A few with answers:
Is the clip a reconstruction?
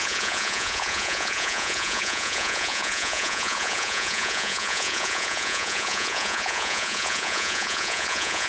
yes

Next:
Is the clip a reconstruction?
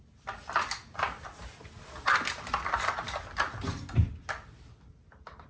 no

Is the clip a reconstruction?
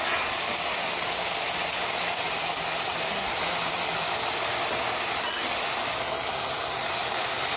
no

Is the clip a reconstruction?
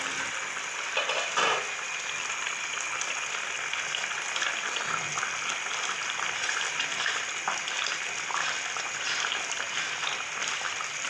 no